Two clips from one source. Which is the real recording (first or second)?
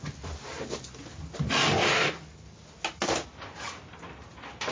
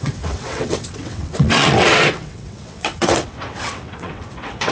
first